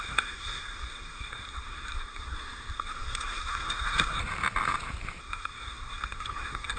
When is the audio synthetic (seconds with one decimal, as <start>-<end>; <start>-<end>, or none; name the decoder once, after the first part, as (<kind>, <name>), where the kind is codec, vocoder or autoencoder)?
0.0-4.2 (codec, SNAC); 5.2-6.8